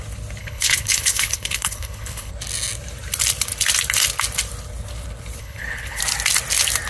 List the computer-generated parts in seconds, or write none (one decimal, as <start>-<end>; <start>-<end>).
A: 0.4-2.3; 5.4-6.0